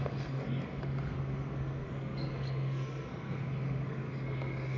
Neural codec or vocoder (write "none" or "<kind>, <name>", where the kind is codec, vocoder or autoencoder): codec, SNAC